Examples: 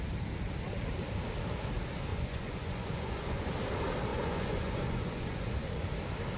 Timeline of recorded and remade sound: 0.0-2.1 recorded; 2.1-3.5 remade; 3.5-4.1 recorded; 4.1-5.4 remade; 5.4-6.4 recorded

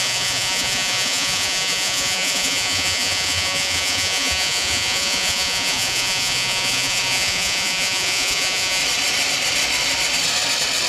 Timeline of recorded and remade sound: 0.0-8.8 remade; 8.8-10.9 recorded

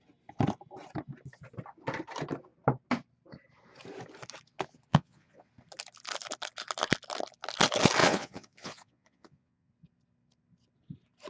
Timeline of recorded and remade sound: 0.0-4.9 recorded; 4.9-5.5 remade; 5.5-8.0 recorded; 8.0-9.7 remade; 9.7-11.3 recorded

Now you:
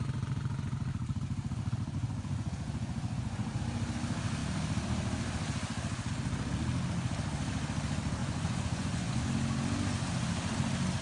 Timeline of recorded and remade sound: 0.0-2.0 recorded; 2.0-3.6 remade; 3.6-8.2 recorded; 8.2-9.3 remade; 9.3-11.0 recorded

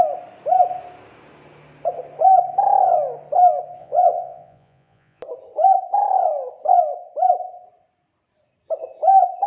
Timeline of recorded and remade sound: 0.0-3.8 recorded; 3.8-5.2 remade; 5.2-9.5 recorded

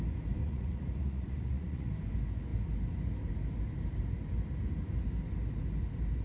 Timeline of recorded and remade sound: 0.0-0.4 recorded; 0.4-1.9 remade; 1.9-6.2 recorded

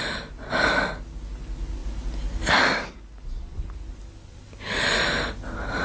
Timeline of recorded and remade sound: 0.0-5.8 recorded

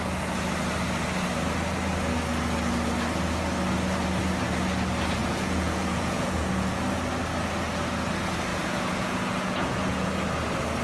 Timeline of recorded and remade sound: 0.0-5.2 recorded; 5.2-6.8 remade; 6.8-8.5 recorded; 8.5-10.1 remade; 10.1-10.8 recorded